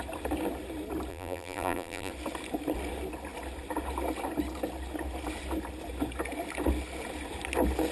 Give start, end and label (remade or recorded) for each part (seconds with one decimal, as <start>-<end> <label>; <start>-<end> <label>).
0.0-1.1 recorded; 1.1-2.1 remade; 2.1-7.9 recorded